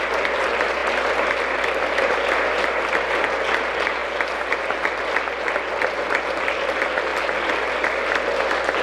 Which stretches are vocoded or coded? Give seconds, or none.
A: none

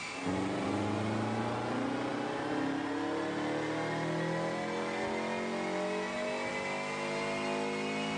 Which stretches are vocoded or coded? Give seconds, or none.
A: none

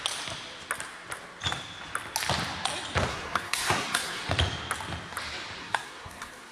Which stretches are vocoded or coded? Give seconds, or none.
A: 3.1-4.3 (codec, SNAC); 5.6-6.5

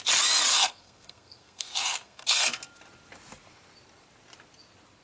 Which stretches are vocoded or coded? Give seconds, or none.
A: 0.5-2.5 (codec, SNAC)